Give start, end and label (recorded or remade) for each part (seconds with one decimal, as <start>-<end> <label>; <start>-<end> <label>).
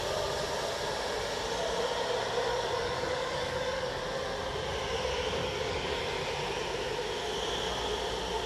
0.0-2.5 recorded; 2.5-4.0 remade; 4.0-5.4 recorded; 5.4-6.0 remade; 6.0-8.5 recorded